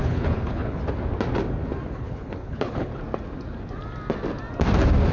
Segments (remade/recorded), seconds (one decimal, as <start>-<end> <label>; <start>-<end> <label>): 0.0-0.8 remade; 0.8-1.9 recorded; 1.9-2.9 remade; 2.9-5.1 recorded